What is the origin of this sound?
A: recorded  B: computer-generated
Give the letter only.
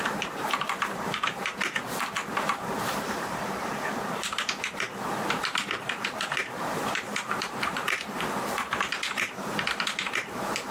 B